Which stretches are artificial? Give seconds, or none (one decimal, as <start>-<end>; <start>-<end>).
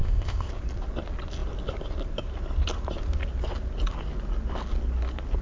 0.0-0.5